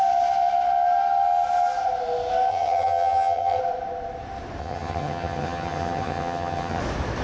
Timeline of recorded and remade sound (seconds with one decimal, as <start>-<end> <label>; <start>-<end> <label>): 0.0-2.5 recorded; 2.5-3.6 remade; 3.6-4.6 recorded; 4.6-6.8 remade; 6.8-7.2 recorded